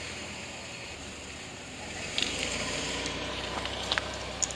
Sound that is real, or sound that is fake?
fake